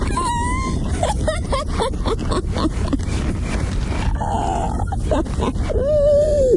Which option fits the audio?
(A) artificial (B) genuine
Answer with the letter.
B